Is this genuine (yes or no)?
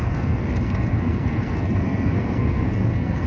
no